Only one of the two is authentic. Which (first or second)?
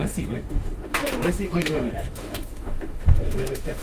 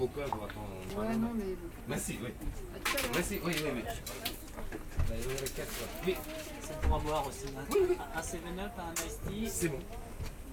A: second